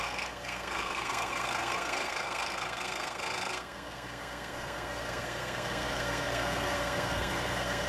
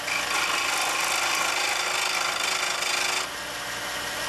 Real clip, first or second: second